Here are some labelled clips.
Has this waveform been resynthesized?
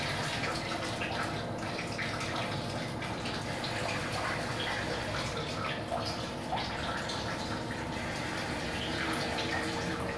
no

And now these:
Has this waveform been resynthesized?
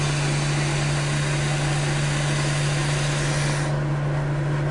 no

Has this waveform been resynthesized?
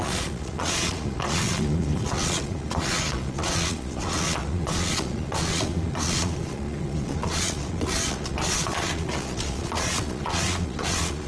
yes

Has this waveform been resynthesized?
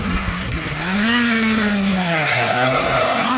yes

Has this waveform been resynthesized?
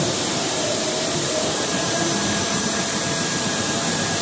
yes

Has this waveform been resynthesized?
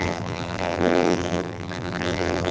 yes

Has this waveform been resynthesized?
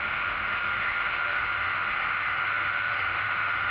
yes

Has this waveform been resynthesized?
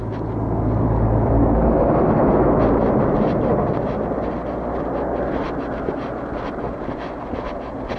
no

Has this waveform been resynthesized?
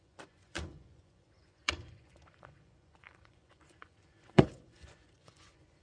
yes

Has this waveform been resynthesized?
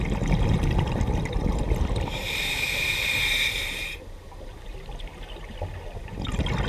no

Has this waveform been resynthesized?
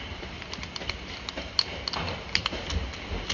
no